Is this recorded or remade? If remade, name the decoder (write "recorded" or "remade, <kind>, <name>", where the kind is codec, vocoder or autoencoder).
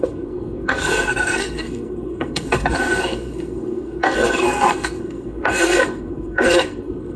remade, codec, SNAC